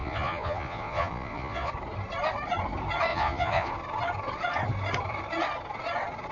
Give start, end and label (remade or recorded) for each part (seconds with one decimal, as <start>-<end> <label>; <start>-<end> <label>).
0.0-1.7 remade; 1.7-3.1 recorded; 3.1-3.7 remade; 3.7-6.3 recorded